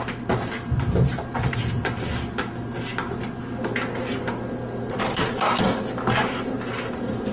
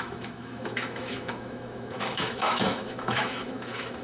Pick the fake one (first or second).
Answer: second